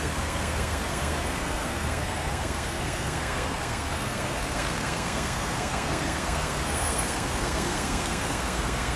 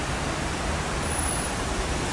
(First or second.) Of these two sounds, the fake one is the first